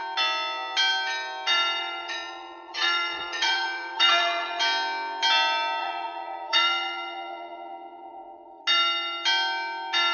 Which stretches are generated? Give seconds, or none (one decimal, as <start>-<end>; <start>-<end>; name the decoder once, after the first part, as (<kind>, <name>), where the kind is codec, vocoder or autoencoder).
1.8-4.6 (vocoder, Vocos); 5.8-8.6